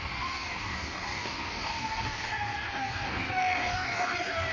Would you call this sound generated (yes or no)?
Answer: yes